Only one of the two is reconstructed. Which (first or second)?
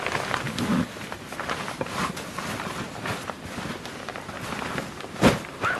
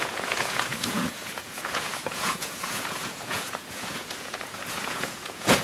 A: second